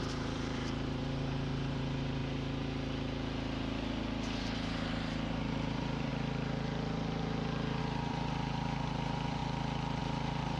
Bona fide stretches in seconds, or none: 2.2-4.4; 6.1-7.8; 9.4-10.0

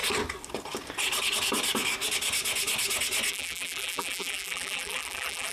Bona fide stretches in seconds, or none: 0.0-3.3

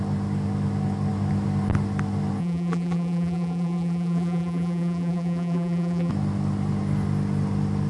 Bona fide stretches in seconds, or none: 0.0-2.4; 6.1-7.9

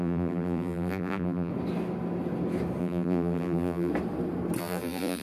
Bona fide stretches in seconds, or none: 1.5-2.8; 3.9-4.6